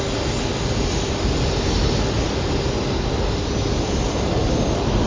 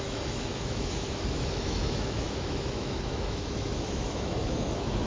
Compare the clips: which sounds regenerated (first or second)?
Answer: second